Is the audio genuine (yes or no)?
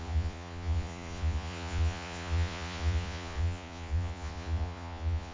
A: no